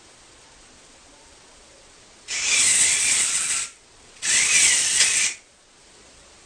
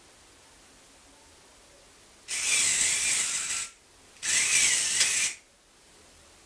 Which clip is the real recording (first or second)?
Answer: second